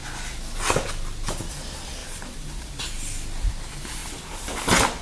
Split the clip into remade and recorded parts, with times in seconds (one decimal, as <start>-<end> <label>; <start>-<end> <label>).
0.0-2.0 recorded; 2.0-2.8 remade; 2.8-4.0 recorded; 4.0-4.6 remade; 4.6-5.0 recorded